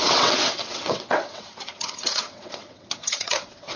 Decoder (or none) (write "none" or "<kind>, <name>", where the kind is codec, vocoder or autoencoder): vocoder, WaveNeXt